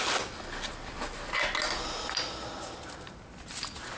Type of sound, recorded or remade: recorded